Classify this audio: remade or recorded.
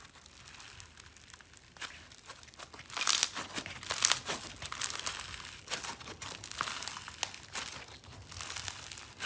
recorded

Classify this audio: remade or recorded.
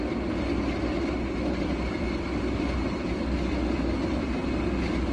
recorded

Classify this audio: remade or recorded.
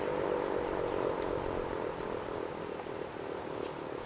recorded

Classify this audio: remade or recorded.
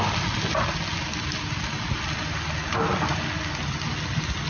recorded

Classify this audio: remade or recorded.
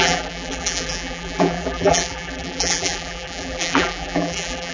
remade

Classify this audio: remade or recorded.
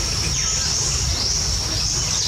recorded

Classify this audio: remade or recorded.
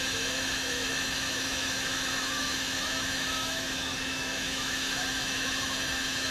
remade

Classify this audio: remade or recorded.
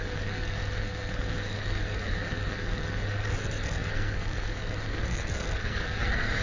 remade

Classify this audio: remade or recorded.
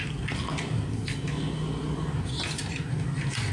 recorded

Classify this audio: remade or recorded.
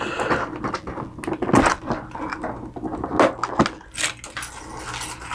recorded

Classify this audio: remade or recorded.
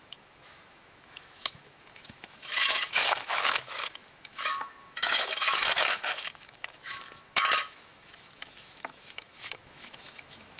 remade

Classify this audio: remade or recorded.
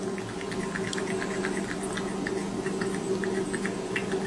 recorded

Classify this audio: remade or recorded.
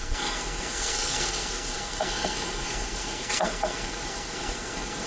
remade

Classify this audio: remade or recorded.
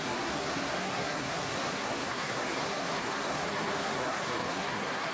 remade